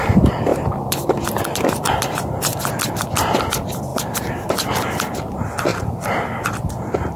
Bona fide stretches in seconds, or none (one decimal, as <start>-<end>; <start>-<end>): 0.0-0.5; 2.6-3.9; 4.5-5.7